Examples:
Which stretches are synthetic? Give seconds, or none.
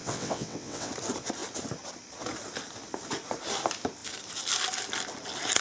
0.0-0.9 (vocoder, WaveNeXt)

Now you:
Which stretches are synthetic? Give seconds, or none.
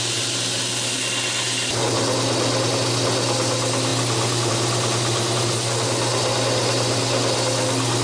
none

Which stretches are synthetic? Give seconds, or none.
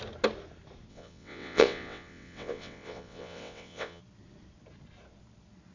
0.9-4.0 (vocoder, WaveNeXt)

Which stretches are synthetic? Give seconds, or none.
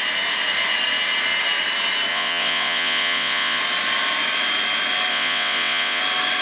2.1-3.6 (vocoder, WaveNeXt); 5.1-6.0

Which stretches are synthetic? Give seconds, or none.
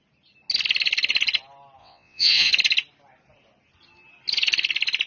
1.8-2.5 (vocoder, WaveNeXt)